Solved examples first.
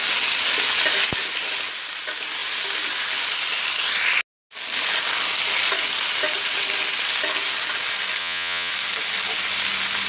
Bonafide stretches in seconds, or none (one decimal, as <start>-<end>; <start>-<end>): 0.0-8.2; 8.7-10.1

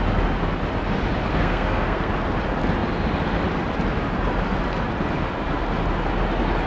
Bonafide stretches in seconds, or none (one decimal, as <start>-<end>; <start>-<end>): 0.0-1.3; 2.1-6.7

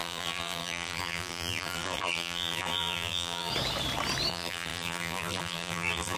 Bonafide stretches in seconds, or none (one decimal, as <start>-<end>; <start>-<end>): 3.5-4.3